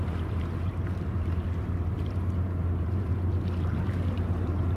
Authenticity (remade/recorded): remade